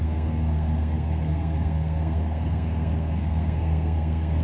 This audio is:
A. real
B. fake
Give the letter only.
B